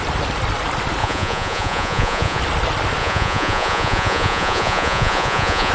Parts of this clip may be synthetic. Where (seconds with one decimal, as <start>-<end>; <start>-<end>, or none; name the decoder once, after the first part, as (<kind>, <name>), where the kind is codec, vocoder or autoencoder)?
1.0-2.4 (vocoder, Vocos); 3.0-5.7